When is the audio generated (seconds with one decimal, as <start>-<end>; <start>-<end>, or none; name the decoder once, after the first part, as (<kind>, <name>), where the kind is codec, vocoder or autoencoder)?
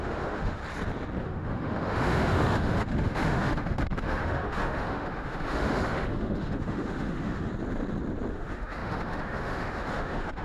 0.0-0.6 (autoencoder, DAC-VAE); 1.2-7.5; 8.3-10.4